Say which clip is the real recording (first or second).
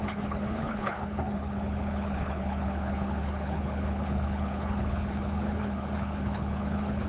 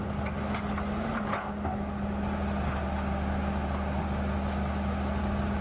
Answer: second